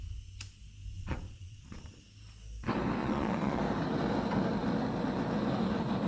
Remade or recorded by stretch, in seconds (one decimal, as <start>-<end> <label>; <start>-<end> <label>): 0.0-0.9 recorded; 0.9-2.0 remade; 2.0-3.0 recorded; 3.0-3.6 remade; 3.6-6.1 recorded